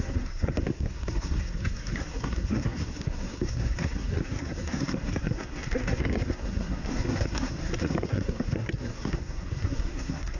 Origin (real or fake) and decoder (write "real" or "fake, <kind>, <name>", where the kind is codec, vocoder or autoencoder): fake, codec, SNAC